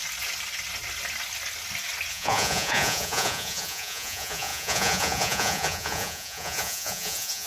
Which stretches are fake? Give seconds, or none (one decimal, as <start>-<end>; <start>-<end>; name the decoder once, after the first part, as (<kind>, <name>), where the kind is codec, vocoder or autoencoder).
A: 2.1-7.5 (vocoder, Vocos)